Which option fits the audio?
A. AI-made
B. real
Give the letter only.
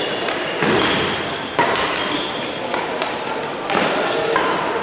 B